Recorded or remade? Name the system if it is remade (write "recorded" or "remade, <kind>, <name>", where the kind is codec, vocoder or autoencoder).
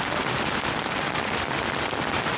recorded